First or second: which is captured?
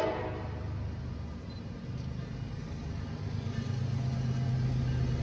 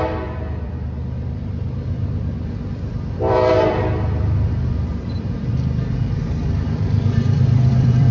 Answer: first